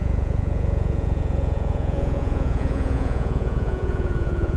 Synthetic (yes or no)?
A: yes